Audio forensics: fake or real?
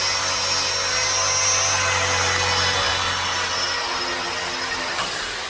real